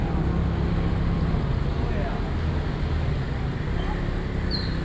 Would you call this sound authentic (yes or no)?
yes